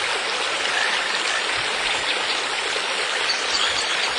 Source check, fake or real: real